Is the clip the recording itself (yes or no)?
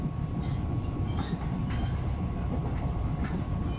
yes